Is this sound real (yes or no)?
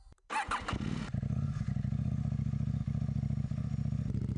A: yes